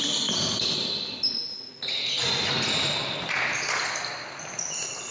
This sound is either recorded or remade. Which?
recorded